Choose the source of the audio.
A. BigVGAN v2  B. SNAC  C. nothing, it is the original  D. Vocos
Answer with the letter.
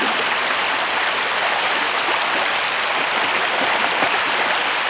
C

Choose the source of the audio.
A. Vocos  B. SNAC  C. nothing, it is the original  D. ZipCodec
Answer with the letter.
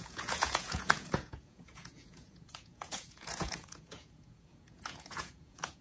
A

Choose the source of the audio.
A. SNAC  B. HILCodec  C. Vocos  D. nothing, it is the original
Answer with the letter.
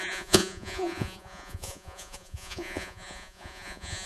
C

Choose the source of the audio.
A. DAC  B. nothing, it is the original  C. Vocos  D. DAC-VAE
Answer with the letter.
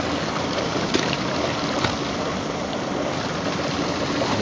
B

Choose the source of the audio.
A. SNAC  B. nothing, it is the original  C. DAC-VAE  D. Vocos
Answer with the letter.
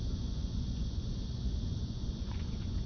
D